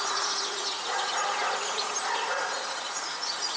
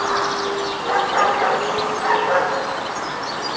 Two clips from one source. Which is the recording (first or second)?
second